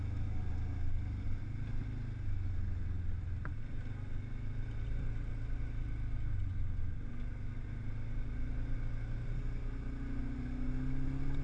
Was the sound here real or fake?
real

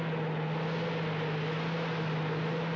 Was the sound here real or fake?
real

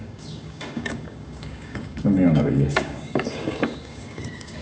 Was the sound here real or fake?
fake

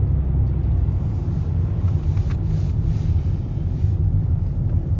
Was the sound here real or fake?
real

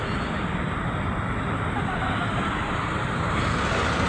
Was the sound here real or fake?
fake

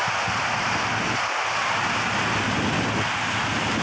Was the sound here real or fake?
real